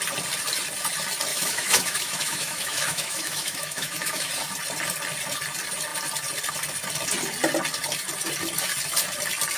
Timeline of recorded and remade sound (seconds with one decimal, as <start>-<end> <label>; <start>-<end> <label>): 0.0-1.3 recorded; 1.3-4.3 remade; 4.3-9.6 recorded